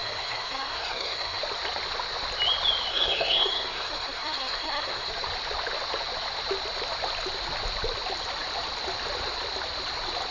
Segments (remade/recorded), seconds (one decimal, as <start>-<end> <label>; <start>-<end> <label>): 0.0-1.4 remade; 1.4-2.9 recorded; 2.9-5.1 remade; 5.1-10.3 recorded